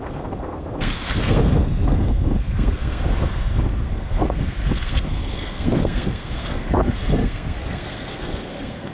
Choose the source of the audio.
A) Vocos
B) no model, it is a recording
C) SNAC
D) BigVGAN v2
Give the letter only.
C